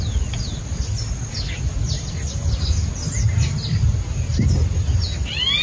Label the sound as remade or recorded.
recorded